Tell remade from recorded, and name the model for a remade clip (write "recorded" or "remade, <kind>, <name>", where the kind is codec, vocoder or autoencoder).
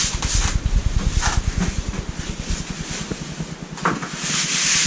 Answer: recorded